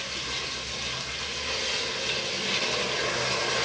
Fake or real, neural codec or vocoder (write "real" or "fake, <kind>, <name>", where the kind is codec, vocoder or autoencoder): real